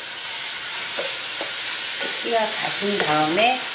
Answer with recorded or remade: recorded